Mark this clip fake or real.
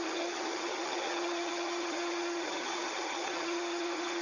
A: fake